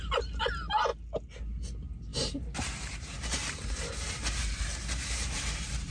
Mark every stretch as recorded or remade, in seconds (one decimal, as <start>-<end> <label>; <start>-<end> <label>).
0.0-2.1 recorded; 2.1-5.9 remade